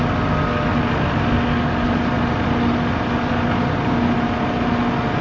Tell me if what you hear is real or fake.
real